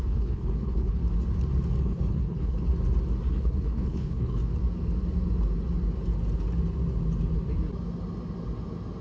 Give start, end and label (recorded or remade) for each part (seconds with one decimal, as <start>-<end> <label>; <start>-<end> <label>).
0.0-1.0 remade; 1.0-1.8 recorded; 1.8-2.7 remade; 2.7-3.3 recorded; 3.3-4.4 remade; 4.4-9.0 recorded